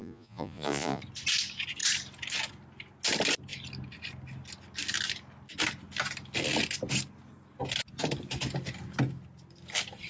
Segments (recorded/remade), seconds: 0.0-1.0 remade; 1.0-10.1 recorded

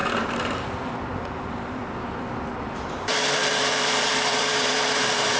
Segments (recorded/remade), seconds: 0.0-2.6 recorded; 2.6-5.4 remade

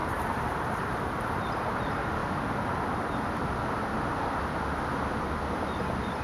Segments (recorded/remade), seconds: 0.0-0.9 recorded; 0.9-2.2 remade; 2.2-6.2 recorded